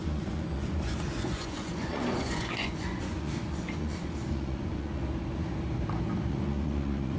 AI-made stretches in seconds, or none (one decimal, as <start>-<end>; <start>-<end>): 0.0-5.0; 6.3-7.2